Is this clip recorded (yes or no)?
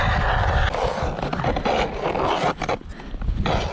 yes